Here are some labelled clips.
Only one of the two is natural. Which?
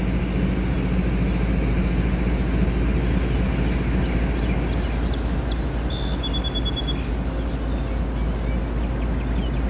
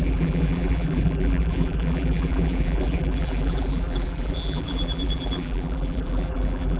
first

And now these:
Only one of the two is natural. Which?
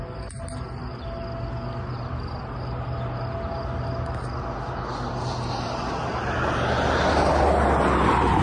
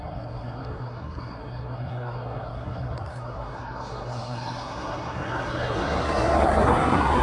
first